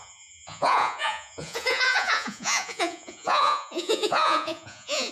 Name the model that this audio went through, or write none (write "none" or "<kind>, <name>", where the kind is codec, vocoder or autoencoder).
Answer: vocoder, Vocos